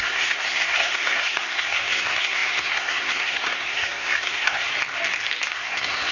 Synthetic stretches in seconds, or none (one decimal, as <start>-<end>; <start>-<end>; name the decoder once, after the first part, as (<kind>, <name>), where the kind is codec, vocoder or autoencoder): 0.0-4.7 (codec, SNAC); 5.5-6.1